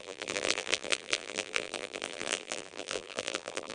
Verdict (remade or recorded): remade